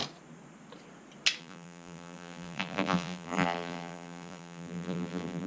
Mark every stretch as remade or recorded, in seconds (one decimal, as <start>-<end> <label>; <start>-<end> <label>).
0.0-1.4 recorded; 1.4-5.5 remade